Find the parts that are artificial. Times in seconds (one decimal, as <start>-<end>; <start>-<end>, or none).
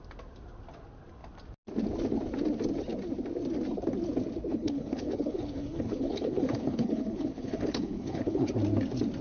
4.5-8.5